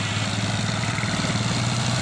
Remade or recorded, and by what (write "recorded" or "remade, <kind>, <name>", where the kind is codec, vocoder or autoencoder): recorded